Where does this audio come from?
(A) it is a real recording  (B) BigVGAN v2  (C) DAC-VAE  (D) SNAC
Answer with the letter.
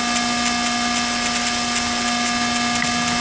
A